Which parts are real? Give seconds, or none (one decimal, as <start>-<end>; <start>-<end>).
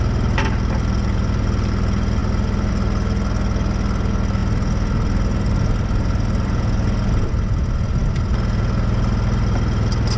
0.0-10.2